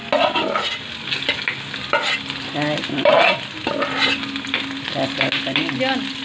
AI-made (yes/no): no